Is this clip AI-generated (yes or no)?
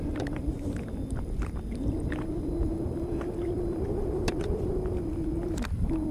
yes